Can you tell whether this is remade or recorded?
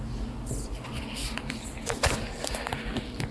recorded